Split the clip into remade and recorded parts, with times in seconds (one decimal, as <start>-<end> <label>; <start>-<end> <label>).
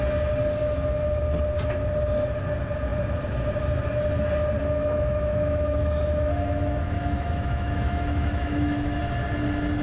0.0-0.6 recorded; 0.6-1.2 remade; 1.2-4.6 recorded; 4.6-9.0 remade; 9.0-9.8 recorded